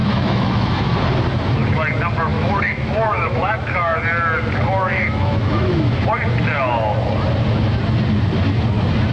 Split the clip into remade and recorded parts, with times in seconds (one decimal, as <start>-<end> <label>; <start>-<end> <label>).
0.0-0.9 remade; 0.9-2.3 recorded; 2.3-4.0 remade; 4.0-4.8 recorded; 4.8-5.9 remade; 5.9-9.1 recorded